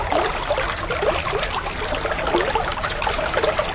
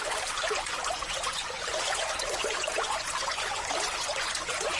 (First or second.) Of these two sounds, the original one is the first